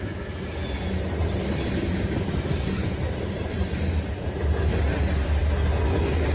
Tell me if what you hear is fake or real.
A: real